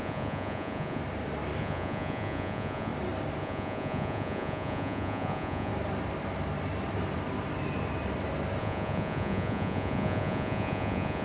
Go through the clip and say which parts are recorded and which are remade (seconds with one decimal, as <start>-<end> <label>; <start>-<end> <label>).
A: 0.0-1.0 remade; 1.0-1.6 recorded; 1.6-2.9 remade; 2.9-3.4 recorded; 3.4-5.7 remade; 5.7-8.6 recorded; 8.6-11.2 remade